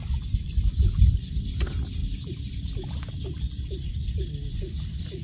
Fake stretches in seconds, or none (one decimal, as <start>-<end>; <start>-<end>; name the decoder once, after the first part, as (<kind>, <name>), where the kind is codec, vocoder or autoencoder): none